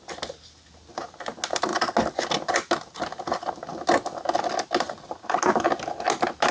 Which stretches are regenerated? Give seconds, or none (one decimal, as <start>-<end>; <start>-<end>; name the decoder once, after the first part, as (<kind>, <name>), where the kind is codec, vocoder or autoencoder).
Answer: none